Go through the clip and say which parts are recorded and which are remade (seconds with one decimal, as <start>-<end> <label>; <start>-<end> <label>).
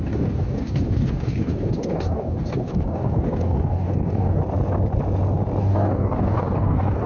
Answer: 0.0-4.4 remade; 4.4-5.6 recorded; 5.6-7.1 remade